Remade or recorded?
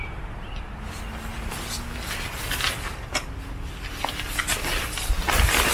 recorded